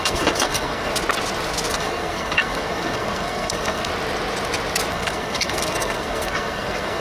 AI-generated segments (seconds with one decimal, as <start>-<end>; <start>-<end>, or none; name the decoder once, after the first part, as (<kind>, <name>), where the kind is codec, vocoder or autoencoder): 0.0-0.9 (codec, SNAC); 1.7-3.9; 4.9-7.0